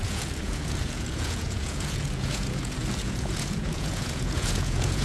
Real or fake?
fake